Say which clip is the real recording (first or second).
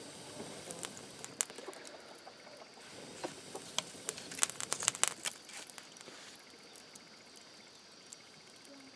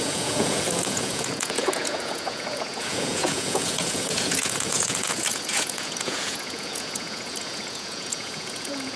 first